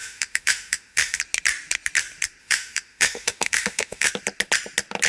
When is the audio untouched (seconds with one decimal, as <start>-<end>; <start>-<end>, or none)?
1.2-2.4; 4.1-5.1